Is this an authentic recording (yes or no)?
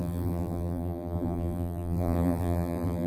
no